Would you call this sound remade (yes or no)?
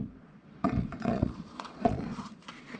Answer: yes